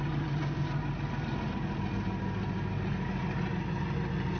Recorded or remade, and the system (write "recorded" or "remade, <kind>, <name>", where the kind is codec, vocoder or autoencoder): recorded